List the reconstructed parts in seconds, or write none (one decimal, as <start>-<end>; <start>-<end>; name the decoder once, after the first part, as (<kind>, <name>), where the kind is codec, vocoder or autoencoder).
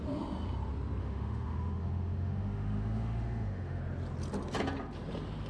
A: 1.0-3.8 (autoencoder, DAC-VAE)